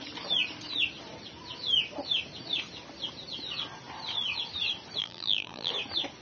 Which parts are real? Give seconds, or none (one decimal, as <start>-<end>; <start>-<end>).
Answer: 0.0-5.0; 5.7-6.2